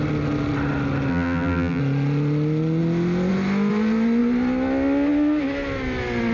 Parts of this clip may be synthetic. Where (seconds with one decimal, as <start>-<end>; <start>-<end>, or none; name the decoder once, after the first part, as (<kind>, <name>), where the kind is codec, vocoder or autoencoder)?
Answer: 1.1-1.8 (vocoder, BigVGAN v2)